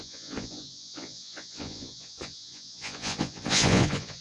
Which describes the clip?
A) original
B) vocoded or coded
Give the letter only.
B